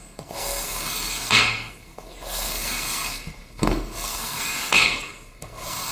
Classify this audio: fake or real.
fake